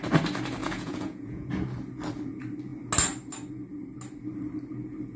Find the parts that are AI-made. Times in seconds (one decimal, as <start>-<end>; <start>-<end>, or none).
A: 0.6-1.5

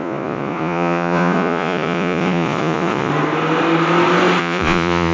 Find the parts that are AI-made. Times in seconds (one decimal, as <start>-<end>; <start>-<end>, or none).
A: 0.0-3.1; 4.4-5.1